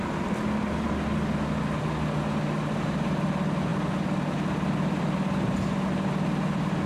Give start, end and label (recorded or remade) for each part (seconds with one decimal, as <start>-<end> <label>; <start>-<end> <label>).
0.0-6.9 recorded